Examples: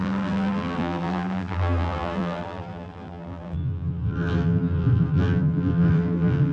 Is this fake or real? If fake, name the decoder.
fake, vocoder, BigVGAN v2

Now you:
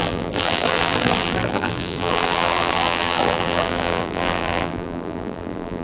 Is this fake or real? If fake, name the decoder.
fake, vocoder, BigVGAN v2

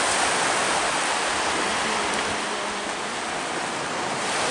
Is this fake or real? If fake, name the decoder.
real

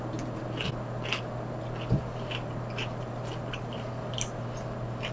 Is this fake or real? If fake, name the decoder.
real